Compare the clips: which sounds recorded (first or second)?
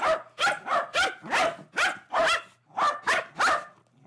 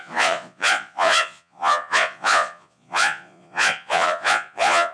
first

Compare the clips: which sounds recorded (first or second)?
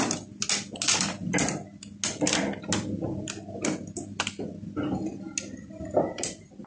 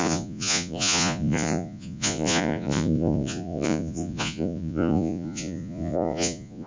first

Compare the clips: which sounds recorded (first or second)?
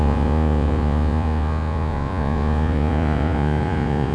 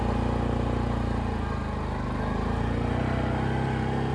second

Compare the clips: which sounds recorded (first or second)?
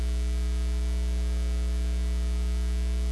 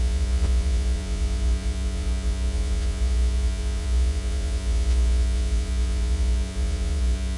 first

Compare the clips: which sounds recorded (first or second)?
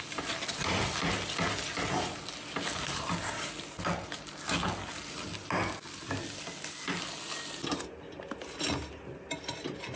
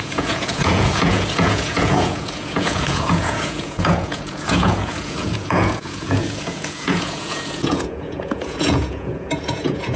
first